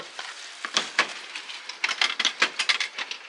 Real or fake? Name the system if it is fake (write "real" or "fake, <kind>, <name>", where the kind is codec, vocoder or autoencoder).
fake, vocoder, BigVGAN v2